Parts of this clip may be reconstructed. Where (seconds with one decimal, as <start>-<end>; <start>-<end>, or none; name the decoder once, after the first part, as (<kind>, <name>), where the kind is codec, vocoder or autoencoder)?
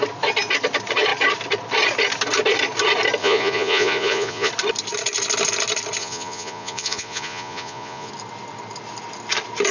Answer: 3.2-4.5 (vocoder, Vocos); 6.0-8.1